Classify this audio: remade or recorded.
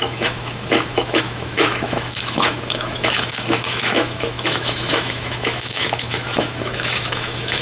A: remade